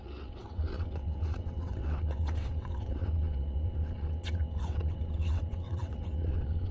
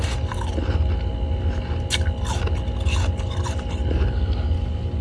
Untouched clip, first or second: second